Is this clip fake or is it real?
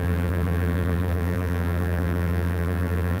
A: fake